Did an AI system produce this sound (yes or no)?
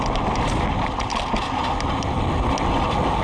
no